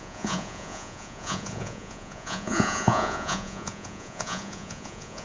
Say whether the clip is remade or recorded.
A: remade